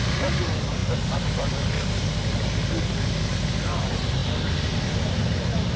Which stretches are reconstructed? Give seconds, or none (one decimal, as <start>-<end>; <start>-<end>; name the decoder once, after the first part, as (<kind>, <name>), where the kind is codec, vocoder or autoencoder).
none